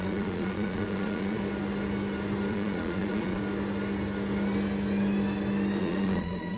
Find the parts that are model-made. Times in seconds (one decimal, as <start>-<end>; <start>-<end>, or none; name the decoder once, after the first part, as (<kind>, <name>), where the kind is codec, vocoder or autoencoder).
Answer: 0.0-1.4 (vocoder, Vocos); 2.5-3.4; 5.8-6.6